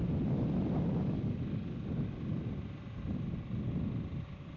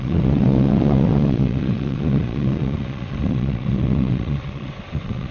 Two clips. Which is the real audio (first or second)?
first